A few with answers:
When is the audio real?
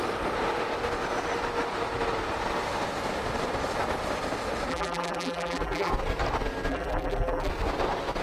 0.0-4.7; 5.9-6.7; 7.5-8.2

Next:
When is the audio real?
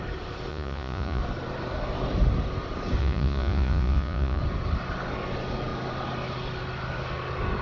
0.0-0.5; 1.2-3.0; 4.4-7.6